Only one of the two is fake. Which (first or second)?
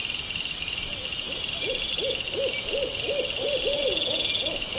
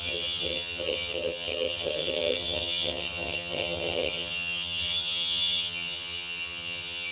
second